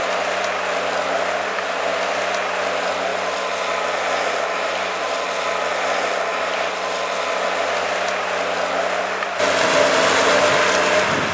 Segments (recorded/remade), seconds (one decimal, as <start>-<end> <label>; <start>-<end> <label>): 0.0-11.3 recorded